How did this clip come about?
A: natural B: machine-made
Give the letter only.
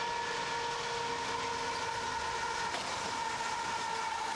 A